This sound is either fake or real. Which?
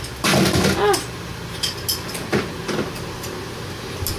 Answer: real